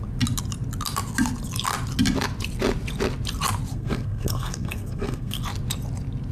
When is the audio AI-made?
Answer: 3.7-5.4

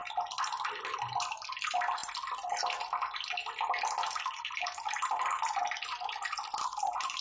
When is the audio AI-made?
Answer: none